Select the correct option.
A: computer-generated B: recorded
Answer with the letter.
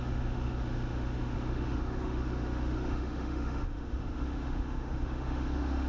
A